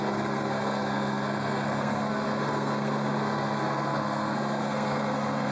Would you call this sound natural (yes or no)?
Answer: no